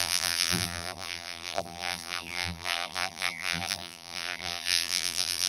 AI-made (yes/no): yes